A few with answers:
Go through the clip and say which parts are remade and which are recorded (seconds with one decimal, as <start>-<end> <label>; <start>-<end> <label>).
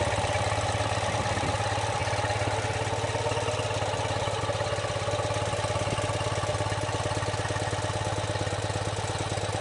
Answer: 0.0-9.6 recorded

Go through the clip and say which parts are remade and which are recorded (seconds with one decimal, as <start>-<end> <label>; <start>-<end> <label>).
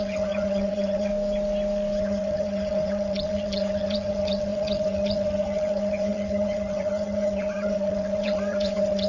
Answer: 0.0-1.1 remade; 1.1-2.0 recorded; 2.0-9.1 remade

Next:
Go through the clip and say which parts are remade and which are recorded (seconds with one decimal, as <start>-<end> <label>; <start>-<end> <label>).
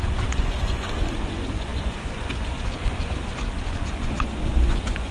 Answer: 0.0-5.1 remade